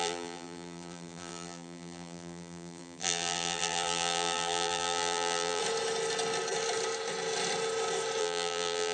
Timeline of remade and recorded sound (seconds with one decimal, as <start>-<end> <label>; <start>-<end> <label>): 0.0-5.6 remade; 5.6-8.2 recorded; 8.2-8.9 remade